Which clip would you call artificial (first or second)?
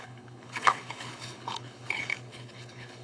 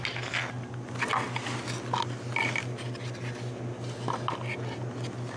first